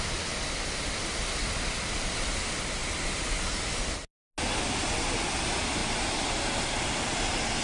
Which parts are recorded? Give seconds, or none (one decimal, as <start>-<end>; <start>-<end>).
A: 0.0-7.6